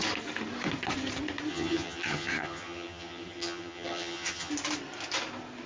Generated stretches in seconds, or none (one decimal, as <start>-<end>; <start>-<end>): 1.5-4.5